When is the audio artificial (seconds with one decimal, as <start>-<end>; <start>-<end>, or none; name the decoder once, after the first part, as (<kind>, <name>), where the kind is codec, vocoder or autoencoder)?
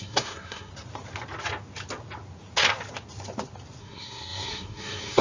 0.0-0.7 (codec, SNAC); 3.8-5.2